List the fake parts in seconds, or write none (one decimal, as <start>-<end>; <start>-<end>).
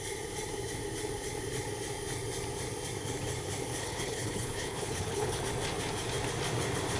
3.8-5.4